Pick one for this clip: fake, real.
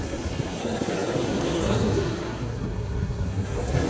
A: fake